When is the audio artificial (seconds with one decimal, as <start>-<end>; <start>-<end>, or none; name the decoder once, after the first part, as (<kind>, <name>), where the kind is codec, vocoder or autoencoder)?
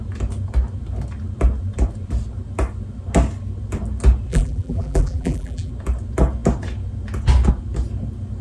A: 4.3-5.7 (vocoder, BigVGAN v2)